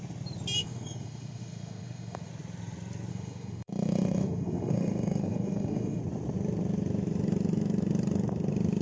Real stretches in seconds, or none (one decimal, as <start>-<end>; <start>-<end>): 0.0-0.6; 2.3-3.1; 6.0-8.8